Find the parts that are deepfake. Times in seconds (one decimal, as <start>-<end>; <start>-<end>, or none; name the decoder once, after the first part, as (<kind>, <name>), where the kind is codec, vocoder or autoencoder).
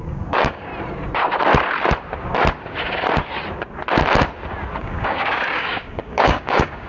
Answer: 0.0-0.7 (codec, DAC); 4.8-6.9